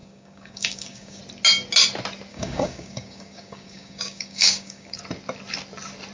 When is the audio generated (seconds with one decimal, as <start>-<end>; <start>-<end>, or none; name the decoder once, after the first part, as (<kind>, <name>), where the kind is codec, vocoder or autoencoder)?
0.0-1.2 (codec, DAC); 2.3-5.0

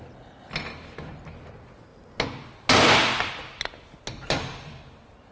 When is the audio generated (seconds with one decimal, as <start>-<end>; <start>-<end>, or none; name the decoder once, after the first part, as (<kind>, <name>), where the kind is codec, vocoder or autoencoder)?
none

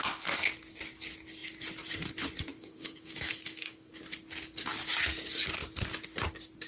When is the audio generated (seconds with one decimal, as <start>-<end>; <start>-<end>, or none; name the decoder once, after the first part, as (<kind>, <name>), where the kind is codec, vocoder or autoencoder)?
2.5-3.9 (autoencoder, DAC-VAE)